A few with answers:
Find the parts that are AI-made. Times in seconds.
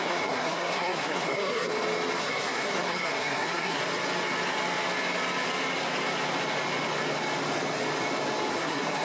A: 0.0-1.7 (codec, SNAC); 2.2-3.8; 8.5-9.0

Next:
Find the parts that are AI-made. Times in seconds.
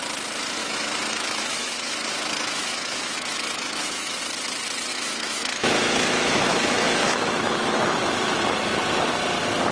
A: 0.6-4.2 (autoencoder, DAC-VAE); 4.9-8.4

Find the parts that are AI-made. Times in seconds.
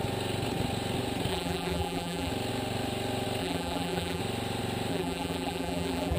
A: 1.3-2.3 (vocoder, BigVGAN v2); 3.4-4.2; 4.9-6.2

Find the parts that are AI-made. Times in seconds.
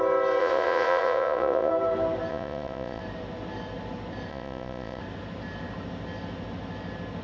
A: 0.4-1.7 (vocoder, Vocos); 2.3-3.0; 4.3-5.0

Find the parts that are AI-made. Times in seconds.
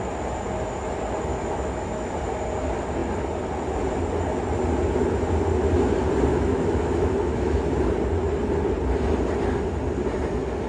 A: 1.3-2.1 (autoencoder, DAC-VAE); 6.3-7.6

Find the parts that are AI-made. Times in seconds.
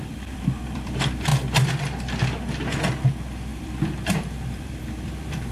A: 0.0-1.3 (vocoder, BigVGAN v2); 3.0-5.5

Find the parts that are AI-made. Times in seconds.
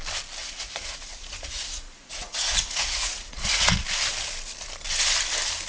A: 0.4-3.8 (vocoder, Vocos)